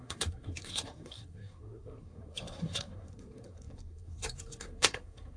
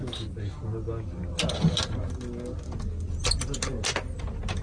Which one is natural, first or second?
second